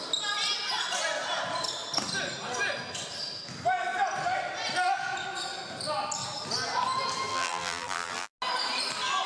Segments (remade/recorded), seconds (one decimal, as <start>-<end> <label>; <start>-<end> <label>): 0.0-7.3 recorded; 7.3-8.3 remade; 8.3-9.3 recorded